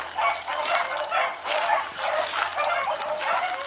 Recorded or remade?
recorded